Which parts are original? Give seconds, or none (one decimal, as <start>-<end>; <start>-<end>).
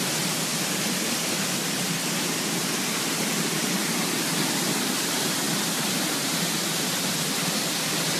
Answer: 0.0-8.2